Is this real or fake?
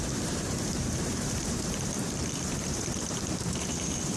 fake